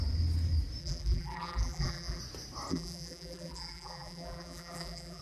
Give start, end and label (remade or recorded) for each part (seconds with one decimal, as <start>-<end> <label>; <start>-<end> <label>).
0.0-0.8 recorded; 0.8-2.2 remade; 2.2-2.7 recorded; 2.7-5.2 remade